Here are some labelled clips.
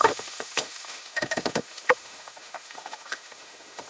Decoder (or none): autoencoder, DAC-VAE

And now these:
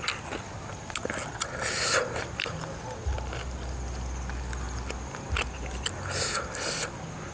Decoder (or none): none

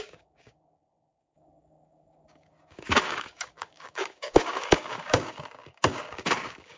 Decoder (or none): codec, DAC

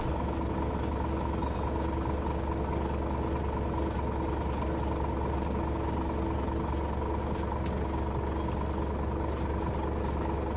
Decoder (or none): none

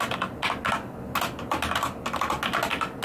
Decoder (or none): none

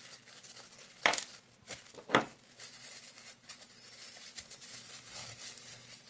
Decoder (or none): none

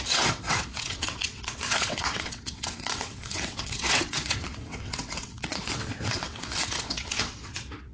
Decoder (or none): vocoder, WaveNeXt